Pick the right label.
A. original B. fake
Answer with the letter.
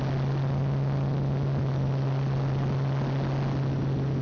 A